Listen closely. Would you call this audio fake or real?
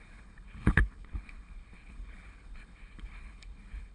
fake